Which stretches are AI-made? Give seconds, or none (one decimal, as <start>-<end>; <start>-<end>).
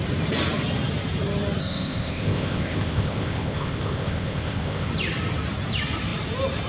1.6-4.9